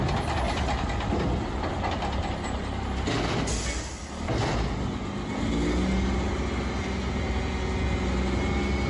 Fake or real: real